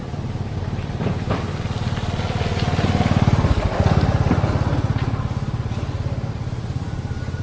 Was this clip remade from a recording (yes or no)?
no